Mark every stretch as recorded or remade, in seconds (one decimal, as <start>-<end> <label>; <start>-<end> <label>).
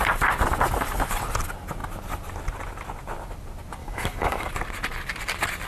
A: 0.0-3.8 recorded; 3.8-4.5 remade; 4.5-5.7 recorded